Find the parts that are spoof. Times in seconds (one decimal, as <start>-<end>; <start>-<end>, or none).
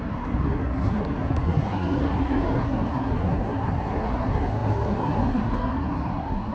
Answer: 0.0-6.5